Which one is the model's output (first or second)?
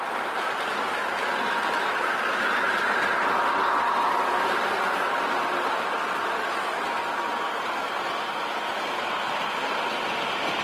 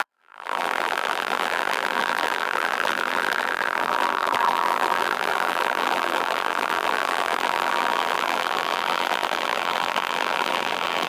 second